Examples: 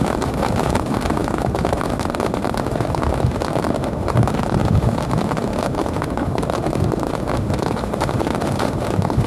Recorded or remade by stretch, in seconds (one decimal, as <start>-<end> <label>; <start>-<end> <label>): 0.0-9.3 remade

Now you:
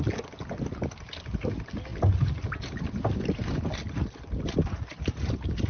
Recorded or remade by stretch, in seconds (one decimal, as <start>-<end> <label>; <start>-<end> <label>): 0.0-5.7 recorded

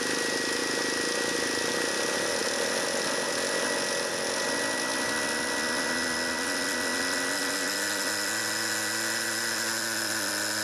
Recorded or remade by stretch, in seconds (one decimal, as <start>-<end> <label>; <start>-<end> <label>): 0.0-10.6 recorded